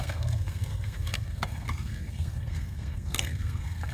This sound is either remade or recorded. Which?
remade